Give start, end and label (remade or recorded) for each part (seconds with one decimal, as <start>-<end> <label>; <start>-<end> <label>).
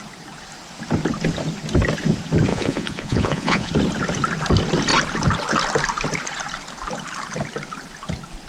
0.0-2.5 recorded; 2.5-3.7 remade; 3.7-8.5 recorded